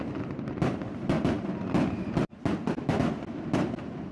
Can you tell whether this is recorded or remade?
recorded